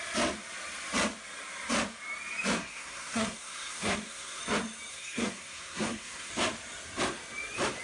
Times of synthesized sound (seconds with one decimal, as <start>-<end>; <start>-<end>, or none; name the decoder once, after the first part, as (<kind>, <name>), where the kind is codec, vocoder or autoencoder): 2.6-4.4 (codec, SNAC); 4.9-6.3